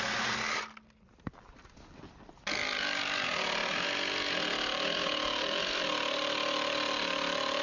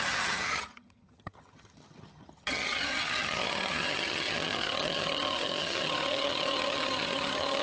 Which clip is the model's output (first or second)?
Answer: second